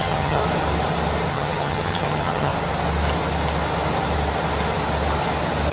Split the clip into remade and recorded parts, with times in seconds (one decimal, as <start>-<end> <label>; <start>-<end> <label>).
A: 0.0-0.4 remade; 0.4-1.3 recorded; 1.3-2.5 remade; 2.5-5.7 recorded